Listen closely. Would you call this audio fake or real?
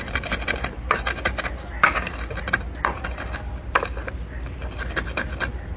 real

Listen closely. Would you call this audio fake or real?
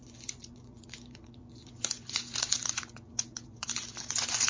fake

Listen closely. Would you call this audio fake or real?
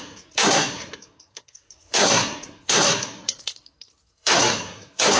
fake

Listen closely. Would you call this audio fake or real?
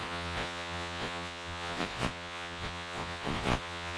fake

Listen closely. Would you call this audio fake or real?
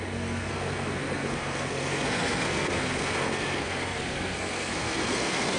fake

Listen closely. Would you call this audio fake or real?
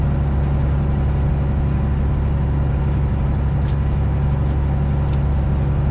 real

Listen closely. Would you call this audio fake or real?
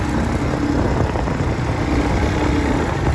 real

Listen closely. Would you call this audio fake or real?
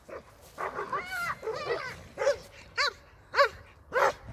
real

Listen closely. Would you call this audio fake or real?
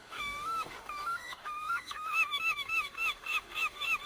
fake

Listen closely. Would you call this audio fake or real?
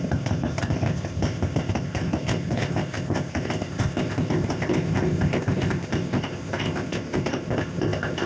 fake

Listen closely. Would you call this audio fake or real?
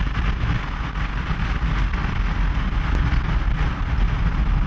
real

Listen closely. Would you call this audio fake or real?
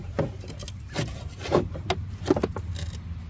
real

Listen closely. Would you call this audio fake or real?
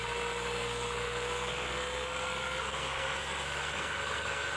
fake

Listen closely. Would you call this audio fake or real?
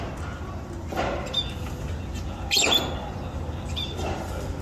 real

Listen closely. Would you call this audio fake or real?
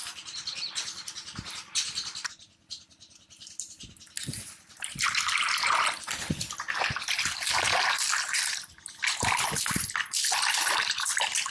real